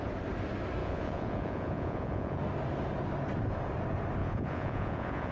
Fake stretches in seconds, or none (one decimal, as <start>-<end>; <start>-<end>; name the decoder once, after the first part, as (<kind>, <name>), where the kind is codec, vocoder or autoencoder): 0.8-2.4 (vocoder, Vocos); 4.2-5.3